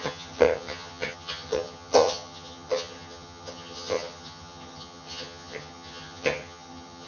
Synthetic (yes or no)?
yes